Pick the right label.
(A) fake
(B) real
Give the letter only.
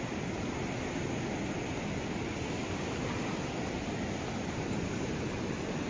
B